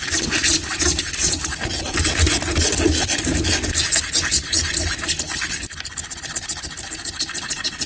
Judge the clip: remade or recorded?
recorded